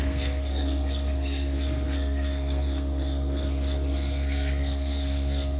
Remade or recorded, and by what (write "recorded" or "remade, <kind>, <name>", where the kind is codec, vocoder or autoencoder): remade, codec, SNAC